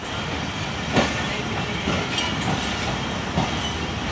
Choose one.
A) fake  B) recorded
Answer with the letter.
B